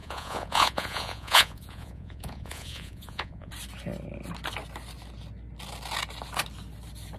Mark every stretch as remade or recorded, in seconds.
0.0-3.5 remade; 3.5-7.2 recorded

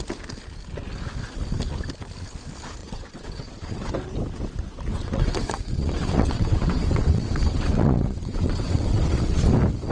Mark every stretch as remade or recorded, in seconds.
0.0-2.8 recorded; 2.8-3.9 remade; 3.9-4.9 recorded; 4.9-9.5 remade; 9.5-9.9 recorded